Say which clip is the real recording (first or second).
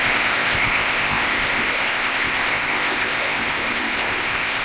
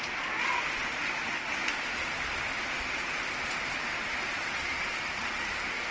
second